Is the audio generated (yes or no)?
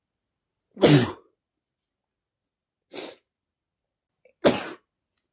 no